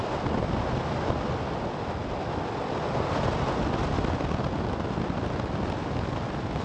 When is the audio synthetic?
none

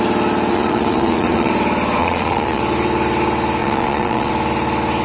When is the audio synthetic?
0.5-1.5 (vocoder, Vocos); 2.0-2.6; 3.6-4.3

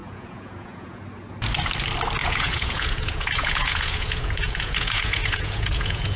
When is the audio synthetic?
0.0-1.0 (vocoder, Vocos); 2.2-6.2

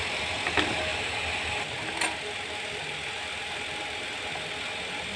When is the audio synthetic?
none

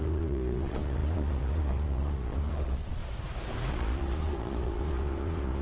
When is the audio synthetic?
0.0-3.0 (vocoder, Vocos); 3.7-5.6

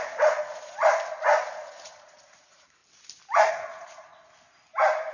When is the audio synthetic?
0.0-0.8 (vocoder, Vocos); 1.4-2.8; 3.5-4.1